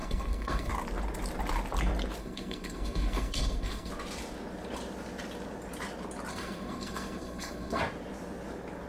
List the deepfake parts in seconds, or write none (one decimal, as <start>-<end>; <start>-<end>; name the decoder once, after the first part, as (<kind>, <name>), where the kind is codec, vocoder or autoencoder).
0.0-0.7 (codec, SNAC); 2.2-3.9; 6.3-7.8

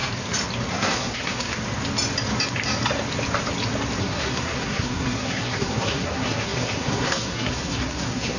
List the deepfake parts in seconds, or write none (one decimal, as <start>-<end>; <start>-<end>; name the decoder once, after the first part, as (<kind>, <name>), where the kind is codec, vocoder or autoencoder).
0.7-1.5 (codec, SNAC); 4.0-8.4

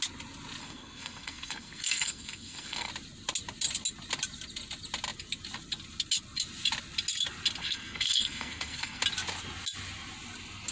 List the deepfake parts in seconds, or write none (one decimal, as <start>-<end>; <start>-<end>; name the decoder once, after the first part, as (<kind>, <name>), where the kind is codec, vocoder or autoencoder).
0.6-2.9 (codec, SNAC); 7.6-9.0